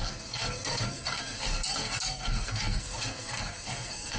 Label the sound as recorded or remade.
remade